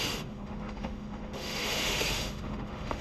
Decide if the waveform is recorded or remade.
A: remade